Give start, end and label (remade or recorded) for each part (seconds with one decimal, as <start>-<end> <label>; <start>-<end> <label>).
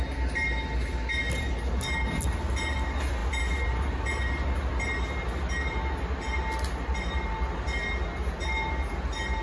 0.0-9.4 recorded